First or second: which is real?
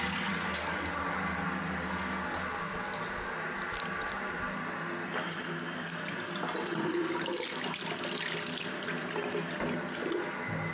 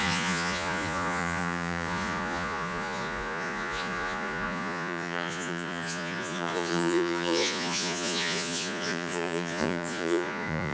first